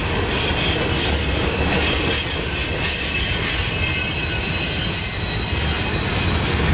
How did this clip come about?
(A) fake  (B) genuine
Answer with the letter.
B